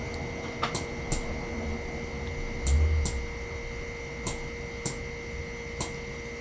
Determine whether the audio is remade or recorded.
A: recorded